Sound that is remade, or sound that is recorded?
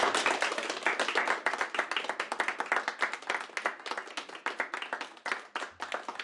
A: recorded